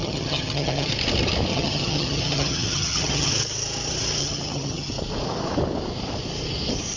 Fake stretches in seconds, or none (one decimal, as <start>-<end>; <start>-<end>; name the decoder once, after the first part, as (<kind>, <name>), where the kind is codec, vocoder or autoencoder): 0.0-0.9 (vocoder, HiFi-GAN); 1.5-3.3; 4.2-4.9